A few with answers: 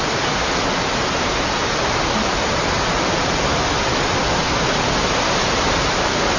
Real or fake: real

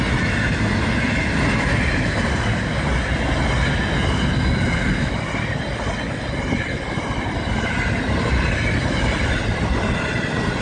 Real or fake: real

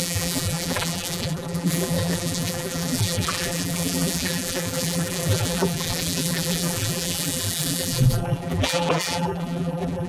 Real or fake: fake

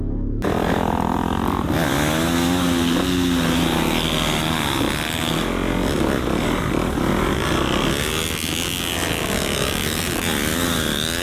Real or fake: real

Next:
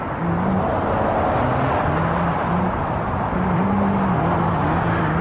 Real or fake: real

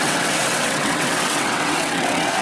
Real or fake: fake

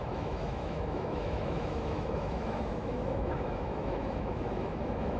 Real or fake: fake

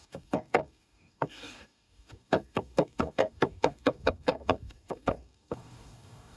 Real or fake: fake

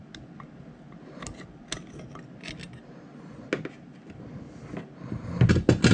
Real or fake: real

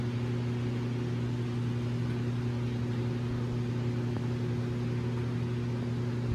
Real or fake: real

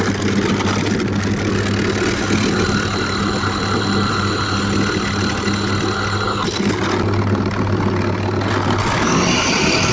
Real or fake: real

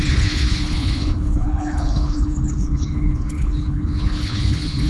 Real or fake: fake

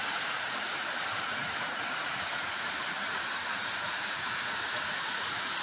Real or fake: fake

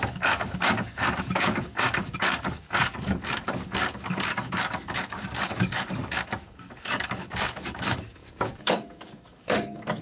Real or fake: fake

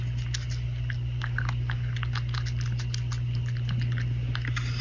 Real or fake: real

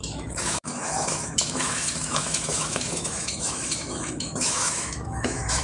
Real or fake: fake